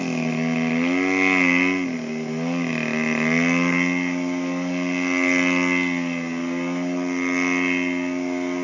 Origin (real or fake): real